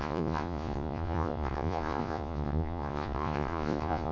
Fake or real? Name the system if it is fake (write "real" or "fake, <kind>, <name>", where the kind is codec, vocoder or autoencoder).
fake, vocoder, Vocos